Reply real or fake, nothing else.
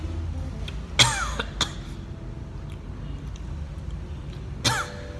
real